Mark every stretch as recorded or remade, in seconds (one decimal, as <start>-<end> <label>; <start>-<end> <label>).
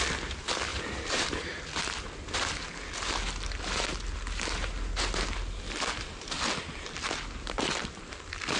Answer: 0.0-0.7 recorded; 0.7-1.3 remade; 1.3-8.6 recorded